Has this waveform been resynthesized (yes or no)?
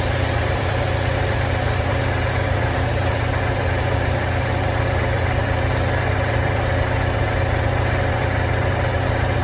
yes